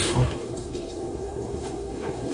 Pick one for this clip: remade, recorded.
remade